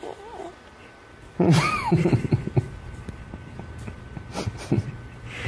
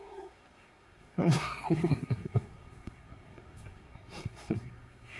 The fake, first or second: second